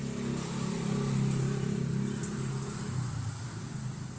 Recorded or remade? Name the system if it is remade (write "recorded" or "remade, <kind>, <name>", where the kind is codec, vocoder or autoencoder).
recorded